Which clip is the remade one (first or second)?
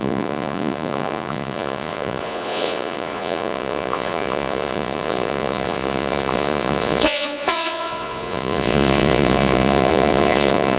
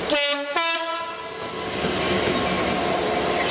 first